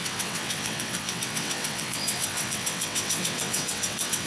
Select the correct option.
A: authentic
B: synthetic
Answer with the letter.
B